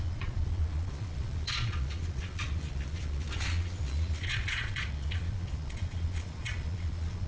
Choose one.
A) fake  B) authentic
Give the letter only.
A